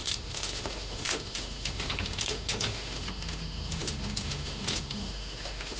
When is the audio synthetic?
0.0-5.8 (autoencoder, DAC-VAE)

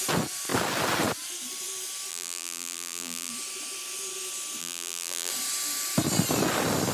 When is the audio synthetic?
2.1-3.3 (vocoder, BigVGAN v2); 4.6-5.3

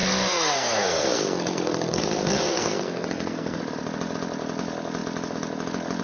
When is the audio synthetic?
0.0-3.6 (codec, SNAC)

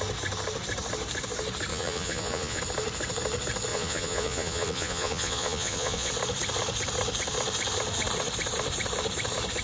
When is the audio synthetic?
1.7-2.6 (vocoder, Vocos); 3.7-6.1

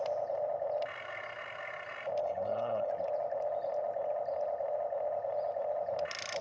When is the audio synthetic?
2.2-2.9 (codec, HILCodec)

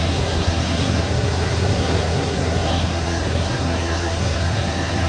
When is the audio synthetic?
0.0-5.1 (codec, SNAC)

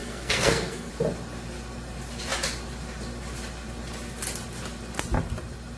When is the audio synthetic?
0.0-0.9 (codec, SNAC)